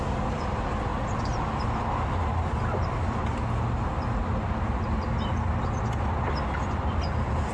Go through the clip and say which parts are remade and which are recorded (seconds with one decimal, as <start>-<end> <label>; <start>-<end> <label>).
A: 0.0-7.5 recorded

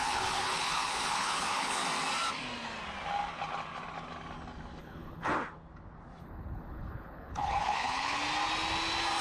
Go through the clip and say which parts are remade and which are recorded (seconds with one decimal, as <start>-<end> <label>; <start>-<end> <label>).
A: 0.0-1.8 remade; 1.8-4.8 recorded; 4.8-5.3 remade; 5.3-6.2 recorded; 6.2-8.2 remade; 8.2-9.2 recorded